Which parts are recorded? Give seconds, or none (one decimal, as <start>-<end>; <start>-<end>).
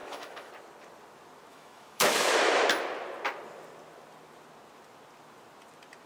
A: 0.5-1.5; 2.3-6.1